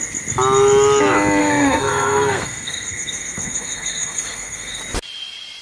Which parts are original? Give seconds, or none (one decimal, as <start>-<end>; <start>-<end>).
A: 0.0-1.4; 4.8-5.6